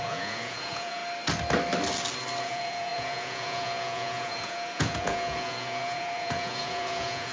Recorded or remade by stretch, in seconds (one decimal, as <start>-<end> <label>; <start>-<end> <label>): 0.0-1.0 remade; 1.0-2.4 recorded; 2.4-7.3 remade